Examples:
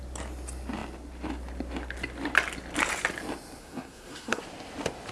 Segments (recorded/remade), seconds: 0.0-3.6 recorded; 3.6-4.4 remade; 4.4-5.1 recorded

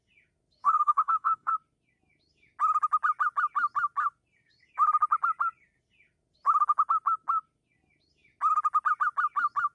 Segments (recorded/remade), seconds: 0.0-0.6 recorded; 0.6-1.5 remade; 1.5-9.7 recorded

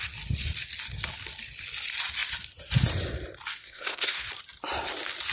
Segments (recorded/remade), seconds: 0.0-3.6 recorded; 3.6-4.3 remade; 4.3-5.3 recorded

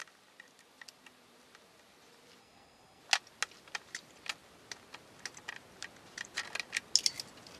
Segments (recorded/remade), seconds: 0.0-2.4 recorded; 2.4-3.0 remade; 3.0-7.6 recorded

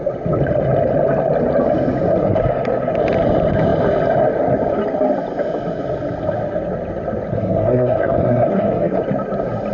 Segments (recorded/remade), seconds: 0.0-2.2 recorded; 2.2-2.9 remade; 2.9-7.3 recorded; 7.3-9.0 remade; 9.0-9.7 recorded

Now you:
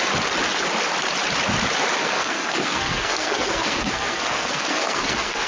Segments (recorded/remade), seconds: 0.0-2.0 recorded; 2.0-5.5 remade